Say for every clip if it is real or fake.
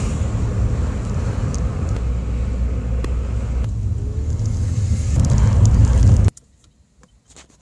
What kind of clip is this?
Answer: real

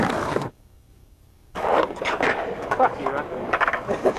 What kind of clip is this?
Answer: fake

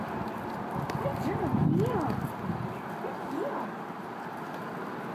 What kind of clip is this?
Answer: real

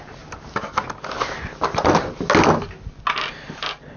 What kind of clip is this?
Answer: real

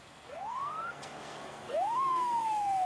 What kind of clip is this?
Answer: fake